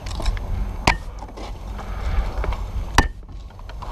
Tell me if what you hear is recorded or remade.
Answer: recorded